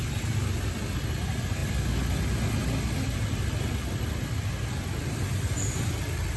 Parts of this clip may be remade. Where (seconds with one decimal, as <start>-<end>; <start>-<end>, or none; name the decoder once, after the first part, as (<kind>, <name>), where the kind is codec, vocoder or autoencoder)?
none